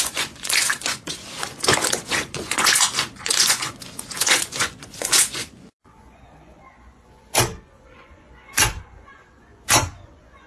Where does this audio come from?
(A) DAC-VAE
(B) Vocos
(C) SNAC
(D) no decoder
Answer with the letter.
B